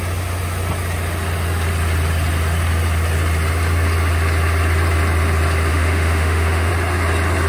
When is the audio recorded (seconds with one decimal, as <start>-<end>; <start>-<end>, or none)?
0.0-5.7; 6.7-7.5